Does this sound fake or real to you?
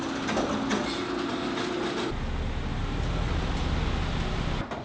real